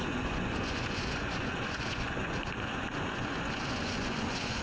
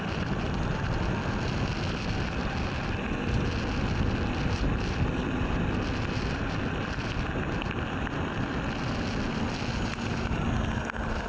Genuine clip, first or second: second